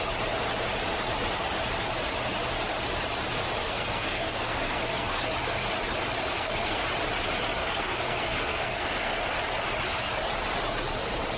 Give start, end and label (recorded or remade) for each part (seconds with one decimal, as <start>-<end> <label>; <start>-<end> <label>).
0.0-3.6 recorded; 3.6-5.2 remade; 5.2-6.3 recorded; 6.3-6.8 remade; 6.8-7.6 recorded; 7.6-9.2 remade; 9.2-11.4 recorded